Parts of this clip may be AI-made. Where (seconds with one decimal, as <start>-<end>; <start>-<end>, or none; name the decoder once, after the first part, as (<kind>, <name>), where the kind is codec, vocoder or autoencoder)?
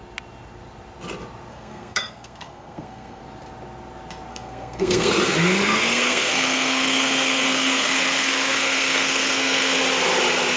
1.5-3.2 (codec, SNAC); 4.3-5.1; 5.6-9.8